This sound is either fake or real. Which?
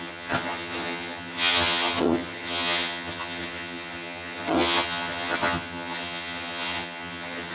fake